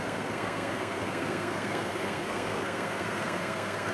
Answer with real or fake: fake